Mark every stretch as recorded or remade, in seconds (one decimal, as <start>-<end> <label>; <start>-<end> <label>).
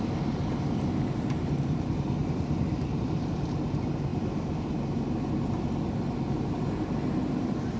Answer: 0.0-7.8 recorded